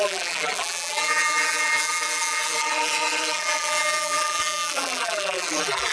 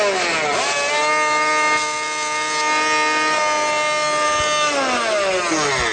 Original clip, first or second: second